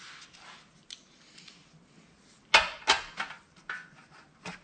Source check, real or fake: real